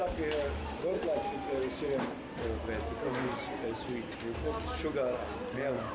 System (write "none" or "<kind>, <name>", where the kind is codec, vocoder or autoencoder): none